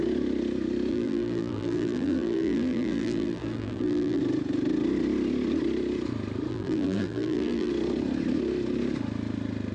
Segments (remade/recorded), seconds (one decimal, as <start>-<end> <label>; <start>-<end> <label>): 0.0-0.9 recorded; 0.9-4.2 remade; 4.2-6.5 recorded; 6.5-7.7 remade; 7.7-9.7 recorded